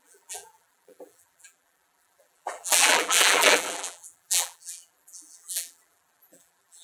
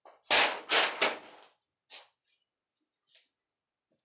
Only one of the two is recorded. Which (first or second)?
second